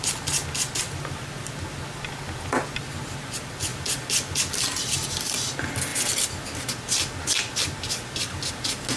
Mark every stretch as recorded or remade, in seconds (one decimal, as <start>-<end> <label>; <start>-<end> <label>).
0.0-9.0 recorded